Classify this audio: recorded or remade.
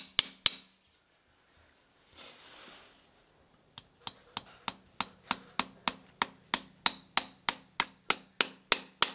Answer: recorded